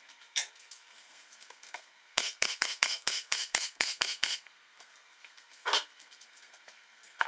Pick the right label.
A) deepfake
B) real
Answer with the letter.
A